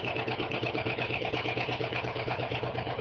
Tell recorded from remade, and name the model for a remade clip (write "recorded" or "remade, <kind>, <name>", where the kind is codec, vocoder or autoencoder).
remade, codec, HILCodec